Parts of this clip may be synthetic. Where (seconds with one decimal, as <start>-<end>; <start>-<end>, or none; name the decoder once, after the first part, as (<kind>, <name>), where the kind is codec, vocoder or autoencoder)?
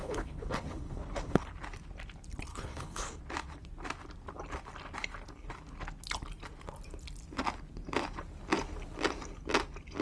0.0-1.5 (codec, HILCodec); 2.5-3.2